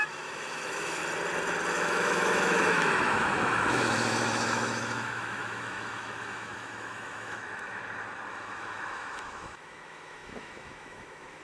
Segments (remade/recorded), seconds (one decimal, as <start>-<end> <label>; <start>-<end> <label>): 0.0-1.0 remade; 1.0-1.7 recorded; 1.7-7.8 remade; 7.8-8.3 recorded; 8.3-11.4 remade